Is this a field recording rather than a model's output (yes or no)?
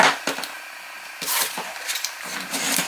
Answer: yes